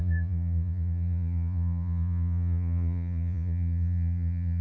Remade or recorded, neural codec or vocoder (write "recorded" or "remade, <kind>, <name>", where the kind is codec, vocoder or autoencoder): remade, vocoder, Vocos